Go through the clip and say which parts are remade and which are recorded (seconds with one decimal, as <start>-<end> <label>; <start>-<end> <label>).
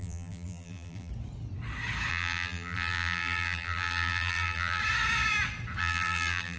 0.0-1.1 remade; 1.1-2.1 recorded; 2.1-4.8 remade; 4.8-5.8 recorded; 5.8-6.6 remade